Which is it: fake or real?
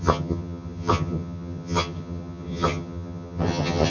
fake